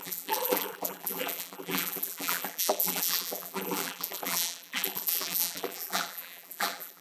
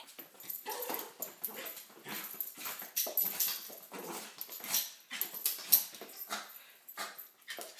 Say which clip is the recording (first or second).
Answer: second